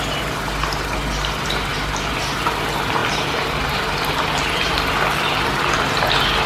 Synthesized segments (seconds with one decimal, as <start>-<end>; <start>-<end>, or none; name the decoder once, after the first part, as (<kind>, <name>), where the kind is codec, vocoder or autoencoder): 1.7-2.6 (vocoder, BigVGAN v2)